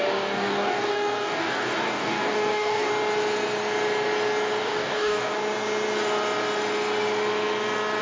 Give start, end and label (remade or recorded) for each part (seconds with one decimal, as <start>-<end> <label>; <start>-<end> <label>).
0.0-2.9 remade; 2.9-4.6 recorded; 4.6-5.3 remade; 5.3-8.0 recorded

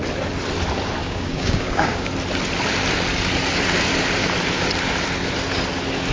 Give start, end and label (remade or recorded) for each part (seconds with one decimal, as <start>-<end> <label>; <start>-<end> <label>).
0.0-1.0 recorded; 1.0-2.1 remade; 2.1-6.1 recorded

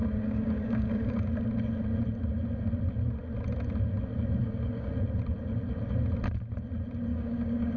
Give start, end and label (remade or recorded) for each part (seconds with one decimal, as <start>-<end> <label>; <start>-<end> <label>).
0.0-1.3 remade; 1.3-4.4 recorded; 4.4-4.9 remade; 4.9-7.1 recorded; 7.1-7.8 remade